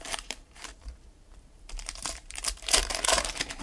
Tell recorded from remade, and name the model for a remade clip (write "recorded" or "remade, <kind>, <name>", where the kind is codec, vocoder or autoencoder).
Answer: remade, vocoder, BigVGAN v2